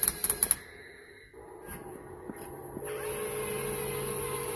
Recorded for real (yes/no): yes